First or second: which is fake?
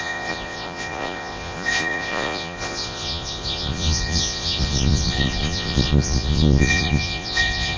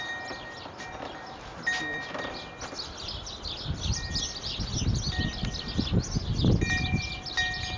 first